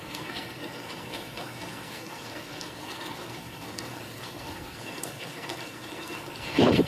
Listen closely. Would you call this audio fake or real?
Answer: fake